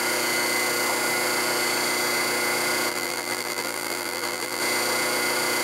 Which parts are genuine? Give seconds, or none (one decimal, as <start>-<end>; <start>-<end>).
0.0-2.9; 4.6-5.6